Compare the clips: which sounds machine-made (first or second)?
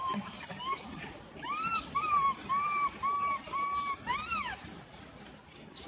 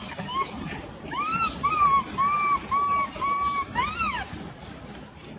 first